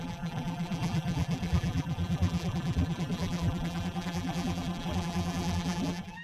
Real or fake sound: fake